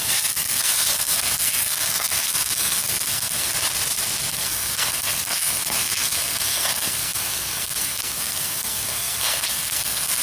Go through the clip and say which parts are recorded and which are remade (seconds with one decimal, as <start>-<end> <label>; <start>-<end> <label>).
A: 0.0-3.5 remade; 3.5-4.3 recorded; 4.3-10.2 remade